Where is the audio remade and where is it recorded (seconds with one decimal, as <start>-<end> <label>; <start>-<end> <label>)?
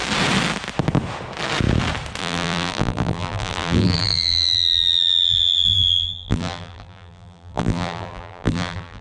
0.0-2.2 recorded; 2.2-9.0 remade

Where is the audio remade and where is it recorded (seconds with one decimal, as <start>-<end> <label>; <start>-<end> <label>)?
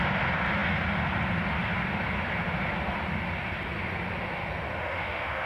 0.0-4.8 recorded; 4.8-5.5 remade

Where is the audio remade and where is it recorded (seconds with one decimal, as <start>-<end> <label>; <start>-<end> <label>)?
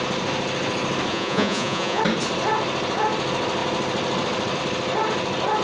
0.0-1.1 recorded; 1.1-2.0 remade; 2.0-5.6 recorded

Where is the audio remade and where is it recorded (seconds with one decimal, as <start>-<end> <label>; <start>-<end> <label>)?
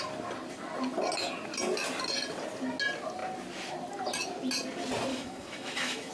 0.0-5.1 recorded; 5.1-6.1 remade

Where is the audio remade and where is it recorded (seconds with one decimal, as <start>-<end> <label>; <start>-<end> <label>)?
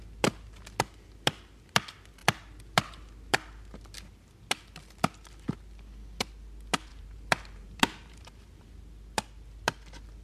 0.0-6.9 recorded; 6.9-8.7 remade; 8.7-10.2 recorded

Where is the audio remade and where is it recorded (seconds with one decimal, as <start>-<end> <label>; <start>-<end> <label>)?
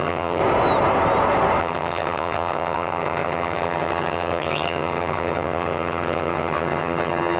0.0-0.4 remade; 0.4-1.6 recorded; 1.6-7.4 remade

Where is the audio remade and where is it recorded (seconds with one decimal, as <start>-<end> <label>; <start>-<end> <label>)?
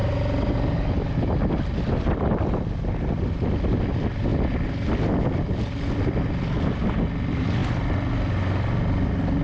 0.0-9.4 recorded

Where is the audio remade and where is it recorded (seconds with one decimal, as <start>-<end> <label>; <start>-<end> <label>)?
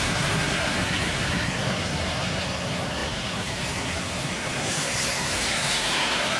0.0-6.4 remade